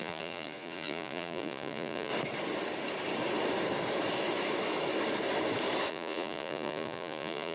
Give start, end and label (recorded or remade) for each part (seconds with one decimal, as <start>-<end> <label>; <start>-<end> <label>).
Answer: 0.0-2.1 remade; 2.1-5.9 recorded; 5.9-7.5 remade